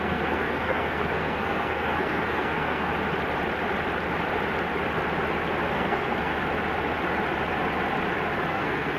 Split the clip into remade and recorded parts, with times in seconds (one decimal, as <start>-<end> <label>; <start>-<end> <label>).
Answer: 0.0-2.9 remade; 2.9-5.7 recorded; 5.7-6.3 remade; 6.3-8.5 recorded; 8.5-9.0 remade